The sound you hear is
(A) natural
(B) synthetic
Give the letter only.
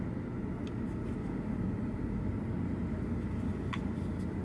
A